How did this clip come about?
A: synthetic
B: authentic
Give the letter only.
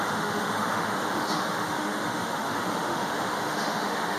A